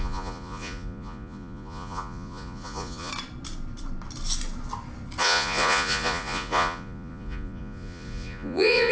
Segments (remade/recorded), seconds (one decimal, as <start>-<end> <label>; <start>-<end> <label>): 0.0-3.1 remade; 3.1-5.2 recorded; 5.2-8.9 remade